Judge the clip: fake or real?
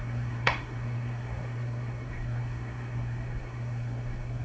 fake